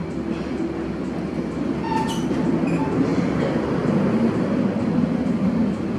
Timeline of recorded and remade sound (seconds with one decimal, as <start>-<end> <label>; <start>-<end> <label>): 0.0-3.1 recorded; 3.1-4.6 remade; 4.6-6.0 recorded